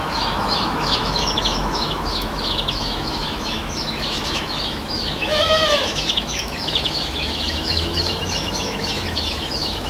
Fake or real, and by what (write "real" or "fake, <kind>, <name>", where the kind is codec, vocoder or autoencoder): fake, autoencoder, DAC-VAE